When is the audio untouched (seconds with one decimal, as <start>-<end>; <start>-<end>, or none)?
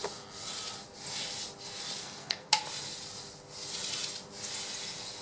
0.0-2.0; 2.6-5.2